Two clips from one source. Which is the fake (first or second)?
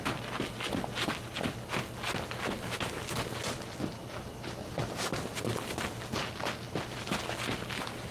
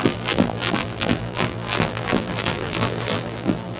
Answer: second